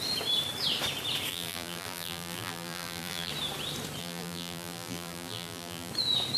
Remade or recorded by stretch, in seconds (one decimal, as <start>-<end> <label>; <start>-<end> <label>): 0.0-1.3 recorded; 1.3-3.3 remade; 3.3-4.0 recorded; 4.0-5.9 remade; 5.9-6.4 recorded